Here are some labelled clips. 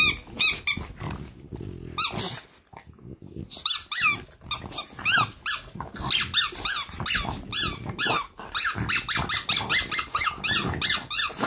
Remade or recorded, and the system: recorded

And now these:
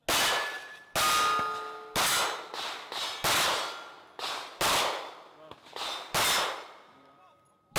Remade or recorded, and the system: recorded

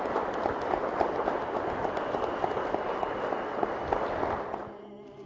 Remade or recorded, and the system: recorded